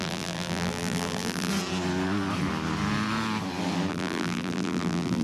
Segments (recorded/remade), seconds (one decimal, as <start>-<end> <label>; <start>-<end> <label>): 0.0-1.5 remade; 1.5-3.9 recorded; 3.9-5.2 remade